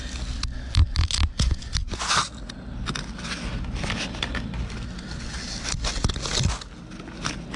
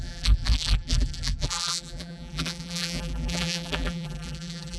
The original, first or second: first